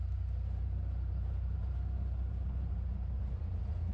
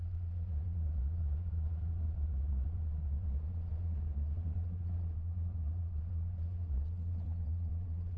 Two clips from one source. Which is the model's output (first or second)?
second